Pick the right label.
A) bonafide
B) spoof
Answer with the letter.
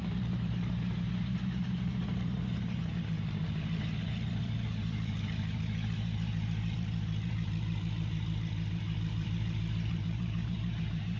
B